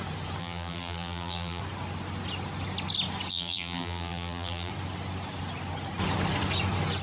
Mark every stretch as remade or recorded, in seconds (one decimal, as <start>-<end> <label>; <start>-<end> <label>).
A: 0.0-0.4 recorded; 0.4-1.6 remade; 1.6-3.3 recorded; 3.3-4.7 remade; 4.7-7.0 recorded